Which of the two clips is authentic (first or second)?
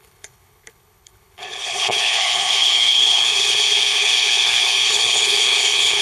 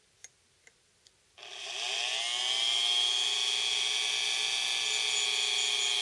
second